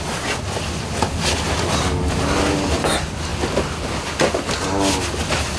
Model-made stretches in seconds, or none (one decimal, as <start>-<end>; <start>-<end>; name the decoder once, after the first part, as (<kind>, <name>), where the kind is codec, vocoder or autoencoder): none